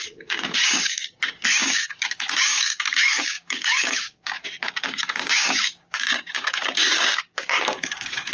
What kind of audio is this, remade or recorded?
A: remade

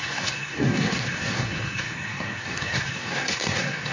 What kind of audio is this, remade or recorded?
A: remade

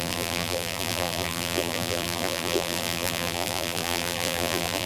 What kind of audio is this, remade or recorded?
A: remade